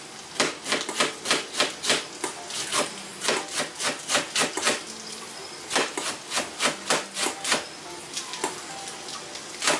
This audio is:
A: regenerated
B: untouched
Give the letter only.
B